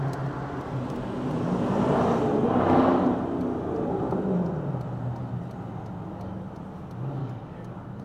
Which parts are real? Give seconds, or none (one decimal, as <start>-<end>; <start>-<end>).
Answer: 0.0-7.2